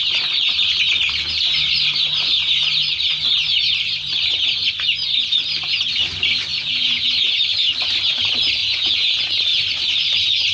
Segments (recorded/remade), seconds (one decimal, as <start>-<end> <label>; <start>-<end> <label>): 0.0-6.5 recorded; 6.5-7.1 remade; 7.1-8.6 recorded; 8.6-9.3 remade; 9.3-10.5 recorded